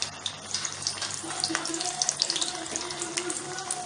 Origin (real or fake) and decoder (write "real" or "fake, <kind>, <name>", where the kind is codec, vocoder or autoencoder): real